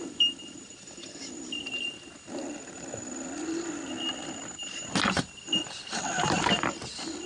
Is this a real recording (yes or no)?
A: yes